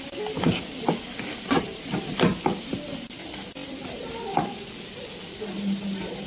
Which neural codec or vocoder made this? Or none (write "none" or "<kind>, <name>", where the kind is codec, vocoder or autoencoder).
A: none